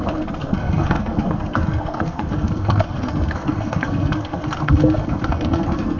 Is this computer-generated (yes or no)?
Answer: yes